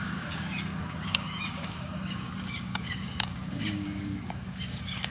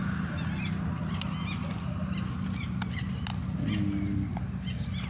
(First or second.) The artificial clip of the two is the first